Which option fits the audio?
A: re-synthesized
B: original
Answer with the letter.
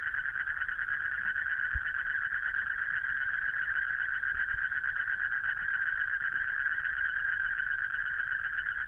B